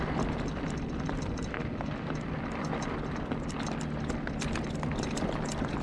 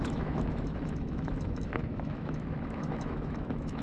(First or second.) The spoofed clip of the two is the second